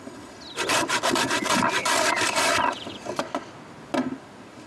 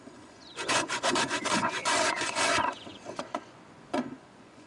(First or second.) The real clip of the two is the first